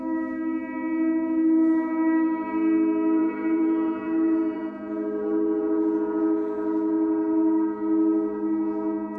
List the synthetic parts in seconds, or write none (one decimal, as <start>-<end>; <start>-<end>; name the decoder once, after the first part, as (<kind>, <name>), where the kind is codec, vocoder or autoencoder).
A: 3.2-4.6 (vocoder, Vocos)